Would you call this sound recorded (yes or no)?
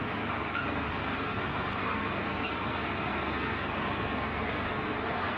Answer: no